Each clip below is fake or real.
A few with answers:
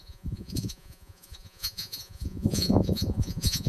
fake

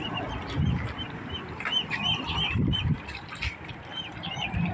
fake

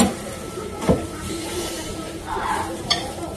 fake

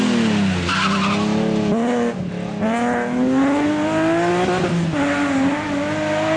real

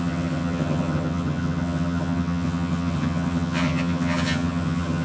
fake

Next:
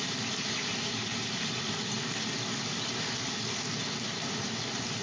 real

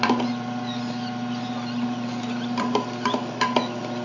fake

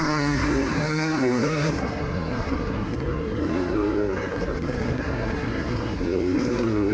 fake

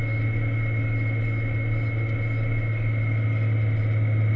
real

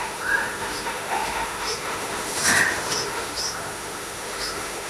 fake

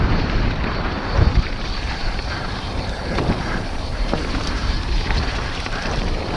fake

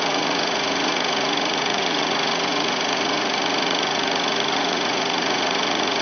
fake